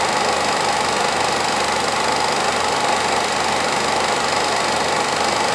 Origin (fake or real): real